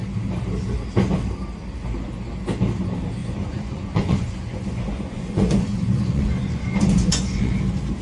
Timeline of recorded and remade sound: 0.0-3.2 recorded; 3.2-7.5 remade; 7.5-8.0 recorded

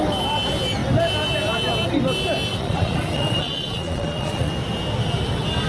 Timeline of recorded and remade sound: 0.0-2.5 recorded; 2.5-4.5 remade; 4.5-5.7 recorded

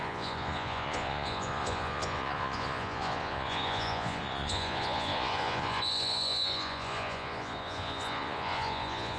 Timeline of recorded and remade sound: 0.0-9.2 remade

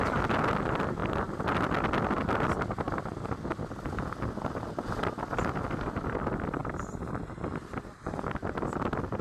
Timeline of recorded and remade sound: 0.0-9.2 recorded